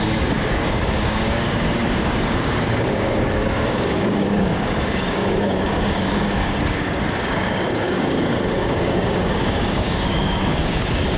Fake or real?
fake